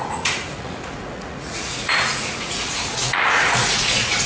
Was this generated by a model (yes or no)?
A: yes